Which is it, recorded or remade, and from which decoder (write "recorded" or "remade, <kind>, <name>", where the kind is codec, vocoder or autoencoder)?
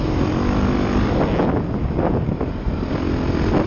recorded